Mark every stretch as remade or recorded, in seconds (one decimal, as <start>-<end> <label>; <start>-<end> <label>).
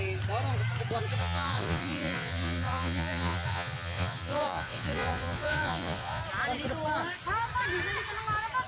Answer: 0.0-1.2 recorded; 1.2-6.2 remade; 6.2-8.7 recorded